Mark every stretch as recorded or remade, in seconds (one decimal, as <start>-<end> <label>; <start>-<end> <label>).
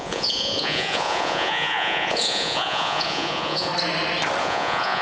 0.0-3.7 remade; 3.7-4.4 recorded; 4.4-5.0 remade